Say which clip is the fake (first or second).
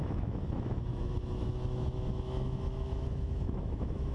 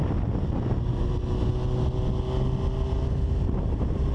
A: first